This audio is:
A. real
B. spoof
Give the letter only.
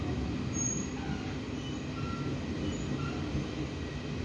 A